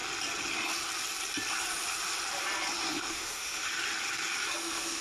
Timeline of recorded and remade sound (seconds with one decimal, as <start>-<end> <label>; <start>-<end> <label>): 0.0-3.0 recorded; 3.0-3.7 remade; 3.7-4.6 recorded; 4.6-5.0 remade